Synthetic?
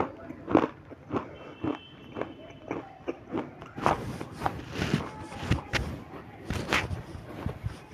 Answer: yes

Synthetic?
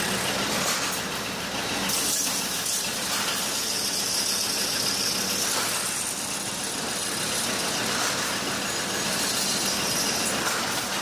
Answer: no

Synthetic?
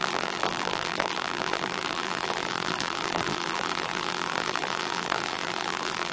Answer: yes